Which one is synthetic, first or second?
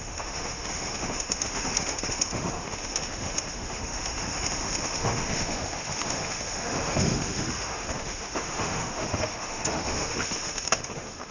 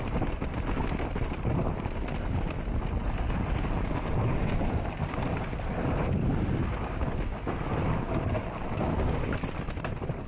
first